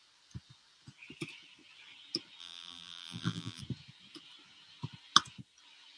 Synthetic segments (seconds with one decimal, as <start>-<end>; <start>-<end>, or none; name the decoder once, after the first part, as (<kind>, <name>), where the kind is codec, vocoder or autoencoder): 2.4-3.6 (vocoder, BigVGAN v2)